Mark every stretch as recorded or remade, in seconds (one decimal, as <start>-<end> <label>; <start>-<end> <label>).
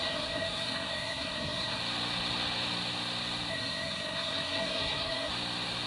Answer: 0.0-1.8 remade; 1.8-3.5 recorded; 3.5-5.3 remade; 5.3-5.9 recorded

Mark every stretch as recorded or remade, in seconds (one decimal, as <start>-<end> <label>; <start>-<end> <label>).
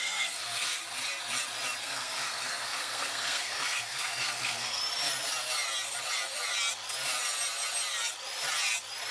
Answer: 0.0-0.8 remade; 0.8-1.8 recorded; 1.8-4.8 remade; 4.8-9.1 recorded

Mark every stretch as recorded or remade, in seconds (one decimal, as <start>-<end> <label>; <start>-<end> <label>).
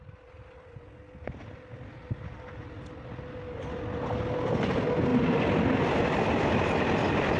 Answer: 0.0-7.4 recorded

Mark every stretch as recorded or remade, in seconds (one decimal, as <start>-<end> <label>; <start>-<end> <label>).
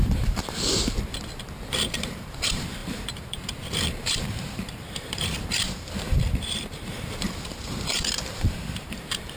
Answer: 0.0-1.1 remade; 1.1-1.7 recorded; 1.7-9.4 remade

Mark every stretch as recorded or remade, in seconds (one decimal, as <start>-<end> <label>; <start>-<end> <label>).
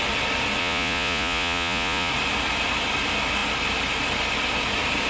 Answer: 0.0-0.6 recorded; 0.6-2.1 remade; 2.1-5.1 recorded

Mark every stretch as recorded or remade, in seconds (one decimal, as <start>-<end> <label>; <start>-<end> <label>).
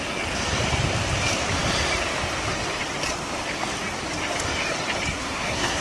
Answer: 0.0-5.1 recorded; 5.1-5.8 remade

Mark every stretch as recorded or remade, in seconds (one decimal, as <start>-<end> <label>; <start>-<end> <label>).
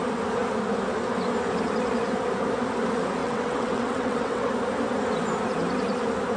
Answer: 0.0-3.2 recorded; 3.2-4.5 remade; 4.5-6.4 recorded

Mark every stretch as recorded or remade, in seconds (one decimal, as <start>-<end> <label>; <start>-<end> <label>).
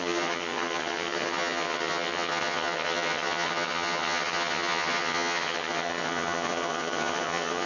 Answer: 0.0-7.7 remade